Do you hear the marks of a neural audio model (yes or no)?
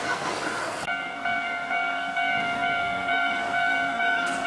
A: yes